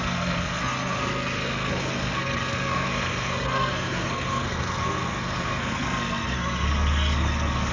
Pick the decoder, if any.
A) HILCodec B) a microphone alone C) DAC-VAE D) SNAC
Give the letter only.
D